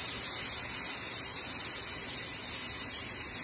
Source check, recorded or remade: remade